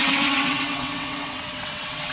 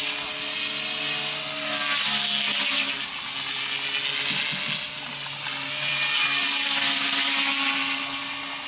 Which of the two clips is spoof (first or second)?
first